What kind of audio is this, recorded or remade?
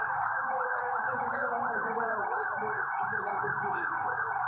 remade